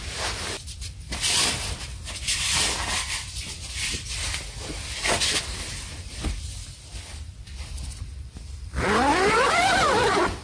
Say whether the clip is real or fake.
real